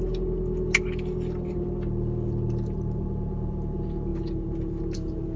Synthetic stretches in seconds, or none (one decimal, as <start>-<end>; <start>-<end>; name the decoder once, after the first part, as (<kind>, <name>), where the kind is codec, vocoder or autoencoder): none